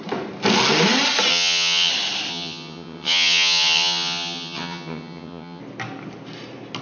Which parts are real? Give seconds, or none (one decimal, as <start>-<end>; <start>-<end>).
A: 0.0-1.3; 1.9-2.3; 5.6-6.8